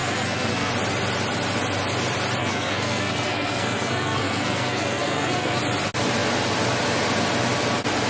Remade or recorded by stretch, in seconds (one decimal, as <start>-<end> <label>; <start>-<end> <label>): 0.0-0.7 remade; 0.7-2.4 recorded; 2.4-5.6 remade; 5.6-8.1 recorded